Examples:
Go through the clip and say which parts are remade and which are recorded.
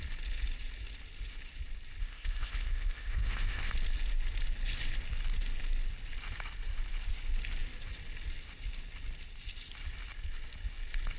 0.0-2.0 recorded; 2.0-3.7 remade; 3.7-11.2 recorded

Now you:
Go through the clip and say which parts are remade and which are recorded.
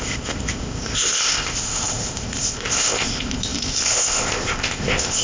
0.0-5.2 remade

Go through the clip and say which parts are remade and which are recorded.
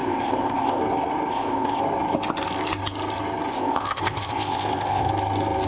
0.0-0.8 remade; 0.8-1.3 recorded; 1.3-1.8 remade; 1.8-3.5 recorded; 3.5-5.1 remade; 5.1-5.7 recorded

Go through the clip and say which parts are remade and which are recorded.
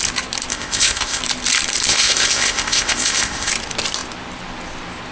0.0-0.5 recorded; 0.5-1.2 remade; 1.2-1.9 recorded; 1.9-3.5 remade; 3.5-5.1 recorded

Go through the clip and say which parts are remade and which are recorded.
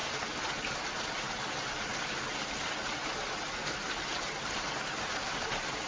0.0-5.9 recorded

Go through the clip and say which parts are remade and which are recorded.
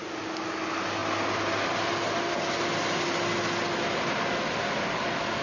0.0-5.4 recorded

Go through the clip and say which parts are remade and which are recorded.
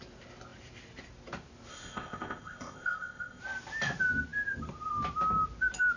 0.0-1.7 recorded; 1.7-3.4 remade; 3.4-6.0 recorded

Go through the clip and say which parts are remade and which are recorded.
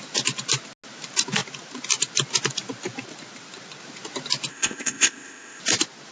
0.0-4.5 recorded; 4.5-5.6 remade; 5.6-6.1 recorded